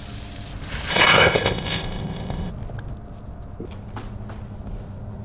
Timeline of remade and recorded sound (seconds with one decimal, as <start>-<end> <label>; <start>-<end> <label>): 0.0-0.9 recorded; 0.9-2.5 remade; 2.5-5.2 recorded